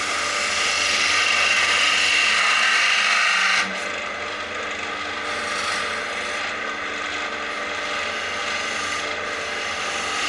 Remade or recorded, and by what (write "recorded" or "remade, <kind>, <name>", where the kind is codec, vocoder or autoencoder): recorded